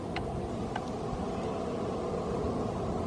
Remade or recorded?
recorded